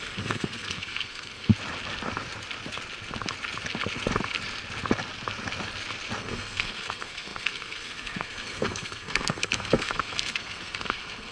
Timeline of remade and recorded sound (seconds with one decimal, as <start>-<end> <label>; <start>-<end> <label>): 0.0-1.5 remade; 1.5-6.2 recorded; 6.2-11.3 remade